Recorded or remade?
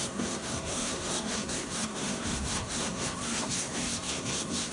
remade